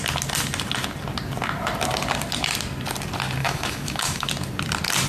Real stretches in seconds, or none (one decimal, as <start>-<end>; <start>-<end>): 0.0-3.4; 4.3-5.1